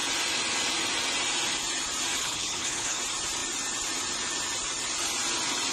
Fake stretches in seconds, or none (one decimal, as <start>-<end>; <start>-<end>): 2.2-3.0